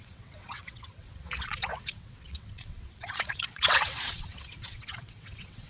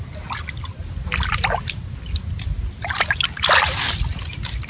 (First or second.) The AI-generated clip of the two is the first